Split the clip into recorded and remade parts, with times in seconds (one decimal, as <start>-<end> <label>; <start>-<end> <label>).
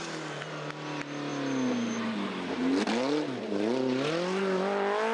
0.0-5.1 recorded